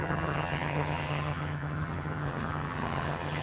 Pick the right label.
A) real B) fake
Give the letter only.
B